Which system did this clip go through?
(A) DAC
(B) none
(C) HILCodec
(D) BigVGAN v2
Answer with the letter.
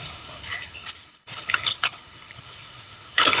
C